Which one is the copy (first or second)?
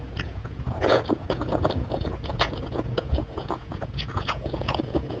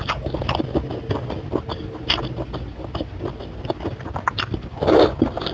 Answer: first